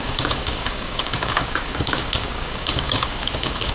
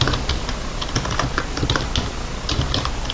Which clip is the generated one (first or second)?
first